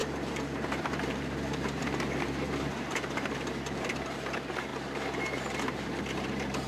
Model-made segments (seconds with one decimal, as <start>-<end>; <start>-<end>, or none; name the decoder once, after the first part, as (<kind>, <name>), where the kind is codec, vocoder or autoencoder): 0.0-6.7 (vocoder, BigVGAN v2)